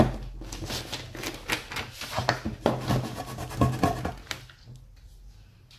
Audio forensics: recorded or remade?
recorded